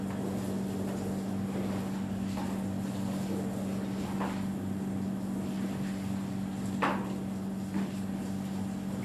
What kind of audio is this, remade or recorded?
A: recorded